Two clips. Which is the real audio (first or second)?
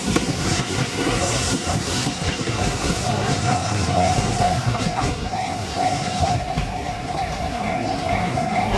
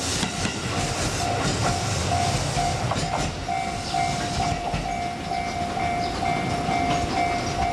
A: second